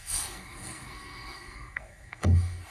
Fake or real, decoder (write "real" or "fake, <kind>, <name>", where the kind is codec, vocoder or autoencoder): fake, codec, SNAC